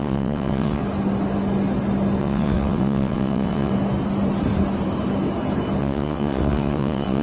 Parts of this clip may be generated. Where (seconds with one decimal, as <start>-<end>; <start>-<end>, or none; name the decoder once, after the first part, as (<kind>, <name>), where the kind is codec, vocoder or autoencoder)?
0.0-0.8 (vocoder, WaveNeXt); 2.2-3.7; 5.8-7.2